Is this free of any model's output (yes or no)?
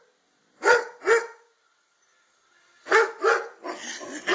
yes